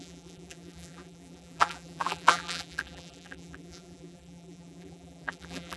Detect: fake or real fake